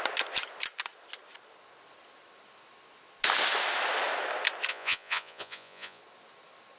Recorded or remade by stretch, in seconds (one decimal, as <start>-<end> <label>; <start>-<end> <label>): 0.0-4.7 recorded; 4.7-6.0 remade; 6.0-6.8 recorded